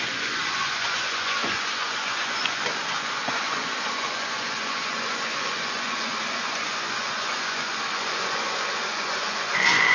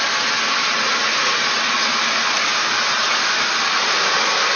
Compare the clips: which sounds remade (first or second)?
first